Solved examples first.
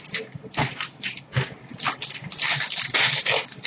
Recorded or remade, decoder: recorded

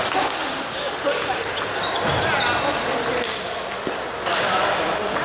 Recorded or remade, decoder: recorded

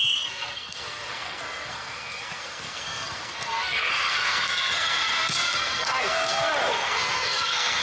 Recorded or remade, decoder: remade, codec, SNAC